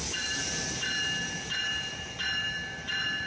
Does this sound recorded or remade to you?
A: remade